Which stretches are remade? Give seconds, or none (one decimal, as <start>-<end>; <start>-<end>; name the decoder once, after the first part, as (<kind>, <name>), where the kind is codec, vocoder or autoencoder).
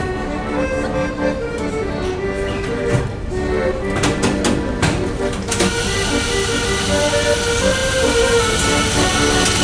7.8-8.4 (vocoder, BigVGAN v2)